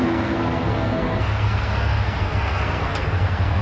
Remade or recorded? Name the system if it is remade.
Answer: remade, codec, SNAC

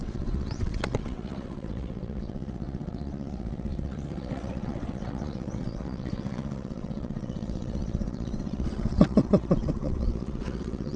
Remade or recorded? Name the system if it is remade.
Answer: remade, vocoder, WaveNeXt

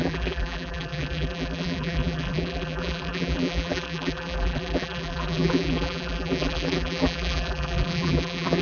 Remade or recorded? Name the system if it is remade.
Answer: remade, vocoder, BigVGAN v2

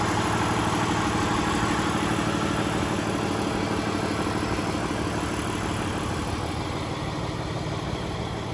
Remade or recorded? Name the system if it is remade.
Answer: recorded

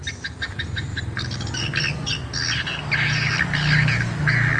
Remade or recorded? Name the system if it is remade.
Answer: recorded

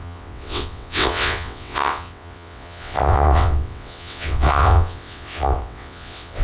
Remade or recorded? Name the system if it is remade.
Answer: remade, vocoder, WaveNeXt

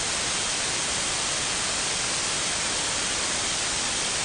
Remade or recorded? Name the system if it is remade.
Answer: remade, vocoder, BigVGAN v2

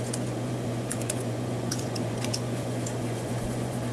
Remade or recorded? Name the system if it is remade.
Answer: remade, vocoder, Vocos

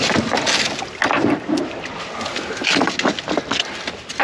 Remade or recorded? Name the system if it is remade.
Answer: recorded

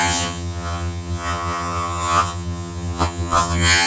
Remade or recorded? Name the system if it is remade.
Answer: remade, vocoder, HiFi-GAN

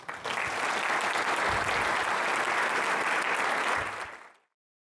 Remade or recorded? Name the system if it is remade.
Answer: recorded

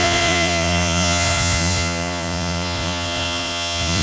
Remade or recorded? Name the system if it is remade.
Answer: remade, vocoder, Vocos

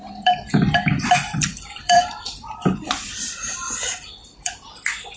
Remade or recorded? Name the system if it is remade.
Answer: remade, vocoder, BigVGAN v2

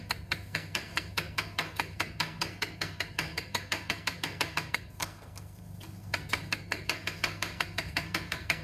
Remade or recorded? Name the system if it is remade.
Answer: remade, codec, SNAC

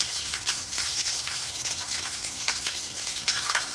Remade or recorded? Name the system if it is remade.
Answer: remade, codec, SNAC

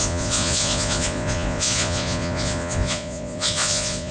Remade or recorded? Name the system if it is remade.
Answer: remade, vocoder, Vocos